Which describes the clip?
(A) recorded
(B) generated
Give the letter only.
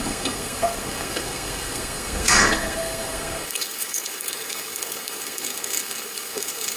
B